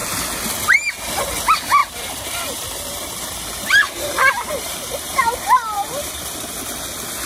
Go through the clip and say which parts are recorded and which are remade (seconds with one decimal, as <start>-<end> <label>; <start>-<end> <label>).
0.0-1.8 recorded; 1.8-6.2 remade; 6.2-7.3 recorded